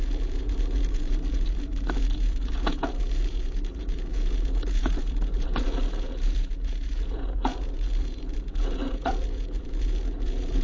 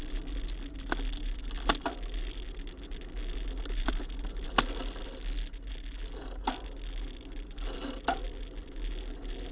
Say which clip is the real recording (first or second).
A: second